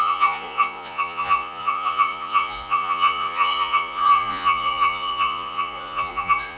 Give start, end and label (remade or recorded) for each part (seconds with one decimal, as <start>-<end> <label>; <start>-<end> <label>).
0.0-6.6 remade